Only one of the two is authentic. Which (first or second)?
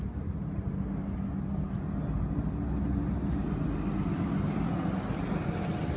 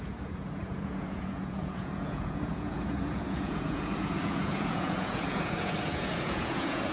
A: first